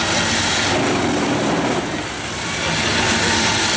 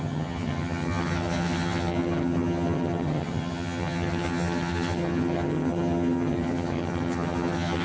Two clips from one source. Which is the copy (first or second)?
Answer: second